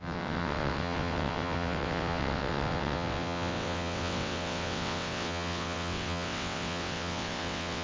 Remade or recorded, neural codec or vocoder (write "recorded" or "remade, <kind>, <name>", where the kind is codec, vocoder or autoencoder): remade, vocoder, WaveNeXt